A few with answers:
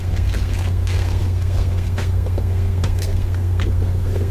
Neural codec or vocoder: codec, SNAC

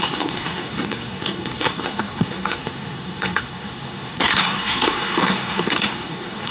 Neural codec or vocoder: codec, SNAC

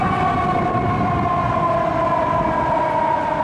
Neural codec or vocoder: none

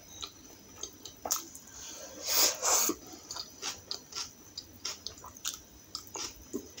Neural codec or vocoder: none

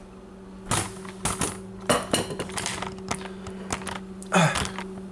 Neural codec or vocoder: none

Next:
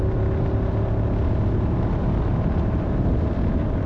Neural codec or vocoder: none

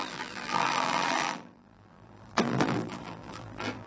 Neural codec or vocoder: vocoder, BigVGAN v2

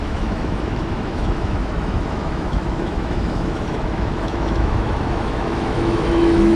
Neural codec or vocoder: autoencoder, DAC-VAE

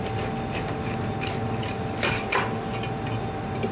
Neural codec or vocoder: none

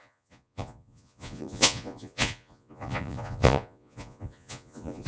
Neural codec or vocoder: vocoder, Vocos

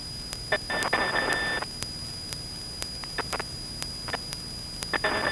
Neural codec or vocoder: none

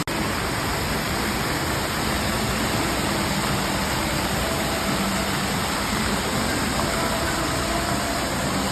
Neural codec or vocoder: none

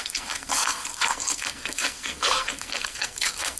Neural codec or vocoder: codec, SNAC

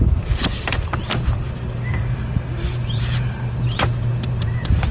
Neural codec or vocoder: vocoder, BigVGAN v2